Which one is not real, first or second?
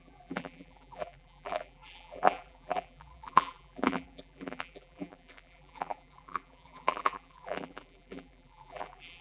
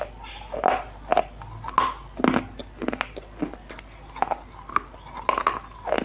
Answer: first